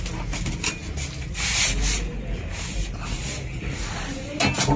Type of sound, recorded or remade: recorded